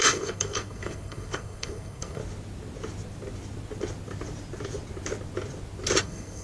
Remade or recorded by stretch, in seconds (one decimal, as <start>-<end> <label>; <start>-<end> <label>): 0.0-2.2 remade; 2.2-6.0 recorded; 6.0-6.4 remade